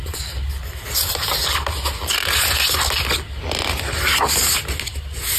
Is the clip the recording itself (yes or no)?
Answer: yes